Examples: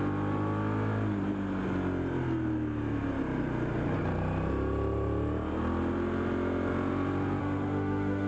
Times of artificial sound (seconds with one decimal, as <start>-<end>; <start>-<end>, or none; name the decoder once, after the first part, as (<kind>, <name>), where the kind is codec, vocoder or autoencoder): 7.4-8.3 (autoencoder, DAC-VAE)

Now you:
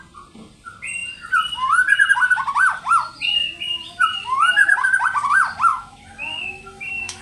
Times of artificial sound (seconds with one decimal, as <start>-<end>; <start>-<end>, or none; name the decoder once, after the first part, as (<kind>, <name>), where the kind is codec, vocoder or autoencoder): 5.7-7.2 (autoencoder, DAC-VAE)

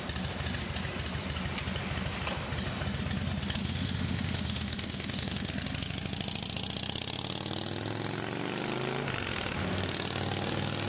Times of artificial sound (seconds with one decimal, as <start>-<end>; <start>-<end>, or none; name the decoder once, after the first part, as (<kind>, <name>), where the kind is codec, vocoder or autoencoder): 3.6-5.5 (autoencoder, DAC-VAE)

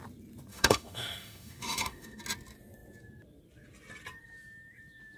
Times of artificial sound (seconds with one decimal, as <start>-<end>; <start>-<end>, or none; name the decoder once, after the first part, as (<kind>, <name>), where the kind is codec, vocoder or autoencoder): 0.5-2.2 (autoencoder, DAC-VAE)

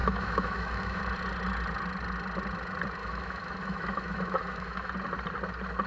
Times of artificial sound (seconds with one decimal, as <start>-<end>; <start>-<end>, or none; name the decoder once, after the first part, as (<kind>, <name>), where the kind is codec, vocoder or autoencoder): 0.0-1.0 (autoencoder, DAC-VAE); 3.0-4.9

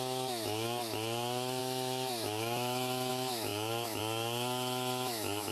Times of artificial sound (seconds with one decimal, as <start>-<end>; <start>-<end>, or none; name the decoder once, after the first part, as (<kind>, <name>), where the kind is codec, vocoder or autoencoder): 0.0-5.5 (autoencoder, DAC-VAE)